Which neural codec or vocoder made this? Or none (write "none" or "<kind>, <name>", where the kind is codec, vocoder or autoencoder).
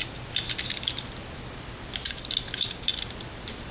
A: none